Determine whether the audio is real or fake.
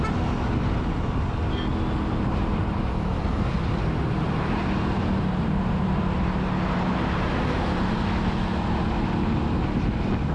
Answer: real